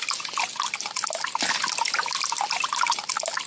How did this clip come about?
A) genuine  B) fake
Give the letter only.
A